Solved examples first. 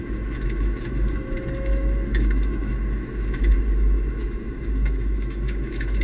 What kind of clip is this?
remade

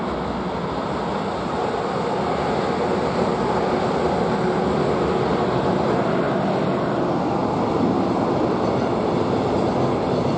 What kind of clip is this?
recorded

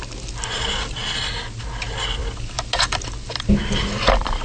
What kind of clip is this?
recorded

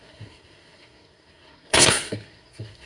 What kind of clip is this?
remade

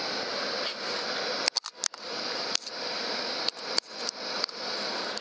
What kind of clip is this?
recorded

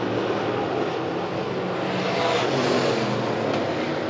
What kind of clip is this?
recorded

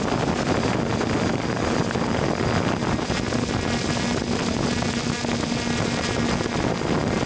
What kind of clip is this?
recorded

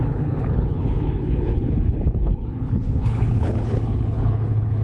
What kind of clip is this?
remade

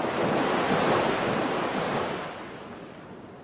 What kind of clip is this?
recorded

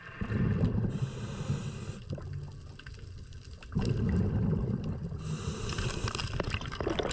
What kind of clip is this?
recorded